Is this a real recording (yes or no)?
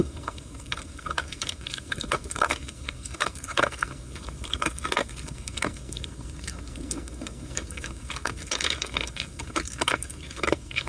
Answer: no